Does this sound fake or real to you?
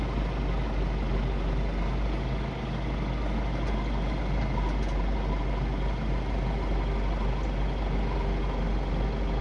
real